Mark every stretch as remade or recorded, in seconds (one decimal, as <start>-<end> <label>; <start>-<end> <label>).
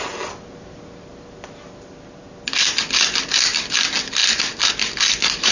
0.0-5.5 recorded